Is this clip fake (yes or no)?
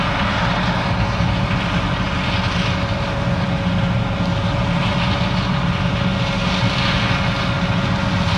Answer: no